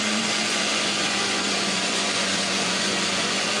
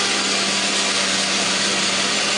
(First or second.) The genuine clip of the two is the second